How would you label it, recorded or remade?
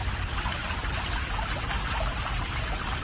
remade